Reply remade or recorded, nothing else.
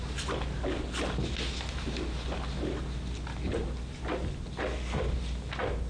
recorded